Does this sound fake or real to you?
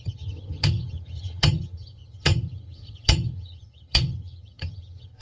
fake